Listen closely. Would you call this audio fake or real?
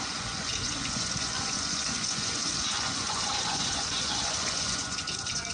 fake